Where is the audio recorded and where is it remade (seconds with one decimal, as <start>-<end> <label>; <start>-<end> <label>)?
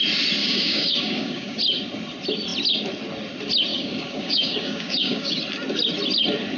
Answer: 0.0-0.4 recorded; 0.4-1.6 remade; 1.6-3.7 recorded; 3.7-5.4 remade; 5.4-6.6 recorded